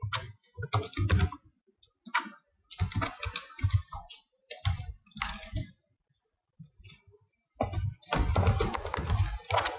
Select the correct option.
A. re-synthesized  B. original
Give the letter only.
B